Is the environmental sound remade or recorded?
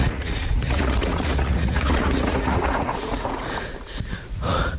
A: remade